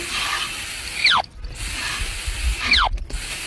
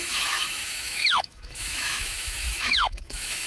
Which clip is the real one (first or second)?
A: first